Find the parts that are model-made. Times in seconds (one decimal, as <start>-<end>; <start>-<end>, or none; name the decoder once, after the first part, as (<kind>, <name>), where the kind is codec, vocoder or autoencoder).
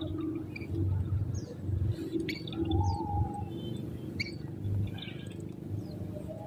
none